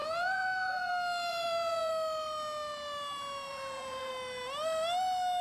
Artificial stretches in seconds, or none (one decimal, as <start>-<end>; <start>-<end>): 0.0-0.9; 1.3-1.9; 3.5-4.1